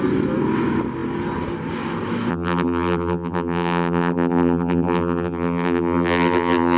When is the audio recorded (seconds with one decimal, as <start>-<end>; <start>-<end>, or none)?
0.0-2.3